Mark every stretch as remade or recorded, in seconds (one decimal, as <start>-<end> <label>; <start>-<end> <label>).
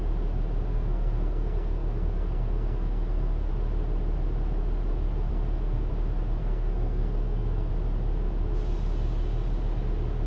0.0-0.7 recorded; 0.7-3.5 remade; 3.5-5.3 recorded; 5.3-5.9 remade; 5.9-6.4 recorded; 6.4-7.7 remade; 7.7-10.3 recorded